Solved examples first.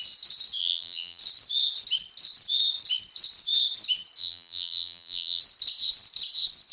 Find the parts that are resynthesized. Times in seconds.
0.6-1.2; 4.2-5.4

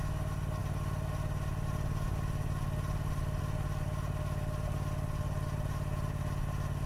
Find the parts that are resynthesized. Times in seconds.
none

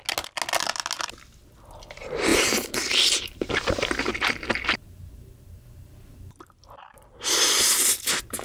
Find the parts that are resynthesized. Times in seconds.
2.3-4.1

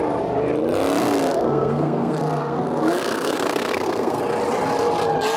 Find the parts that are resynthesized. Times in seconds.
1.0-4.2

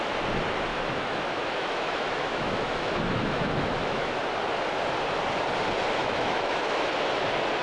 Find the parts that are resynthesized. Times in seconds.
0.7-4.2; 6.0-6.9

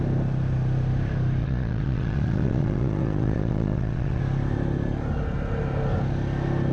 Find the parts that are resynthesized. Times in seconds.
1.4-4.2